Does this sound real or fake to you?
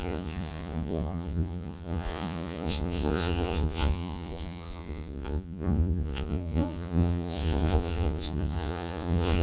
fake